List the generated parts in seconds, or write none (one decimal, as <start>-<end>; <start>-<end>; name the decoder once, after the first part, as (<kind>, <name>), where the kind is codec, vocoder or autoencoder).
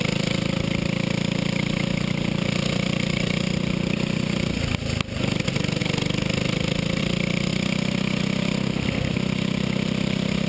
none